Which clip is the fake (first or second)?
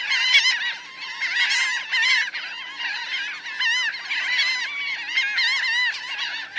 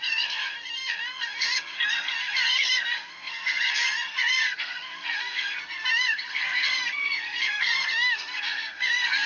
second